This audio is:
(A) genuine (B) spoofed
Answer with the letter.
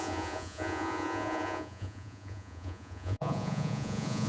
B